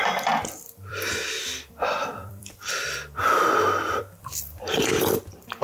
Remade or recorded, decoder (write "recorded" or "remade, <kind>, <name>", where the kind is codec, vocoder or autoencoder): remade, vocoder, BigVGAN v2